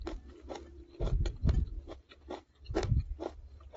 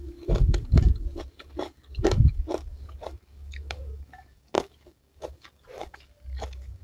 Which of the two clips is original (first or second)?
first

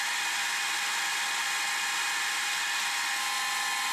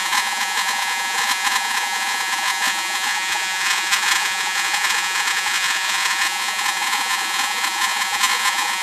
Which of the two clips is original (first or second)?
first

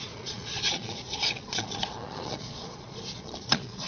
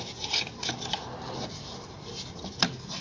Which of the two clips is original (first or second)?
second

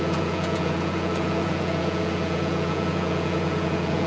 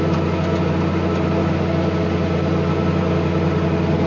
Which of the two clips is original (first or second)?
second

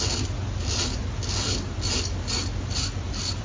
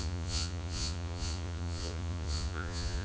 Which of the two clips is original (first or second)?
first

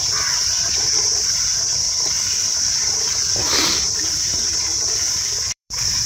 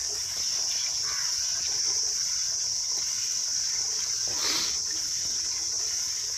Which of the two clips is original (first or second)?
second